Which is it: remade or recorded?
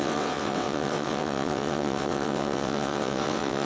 remade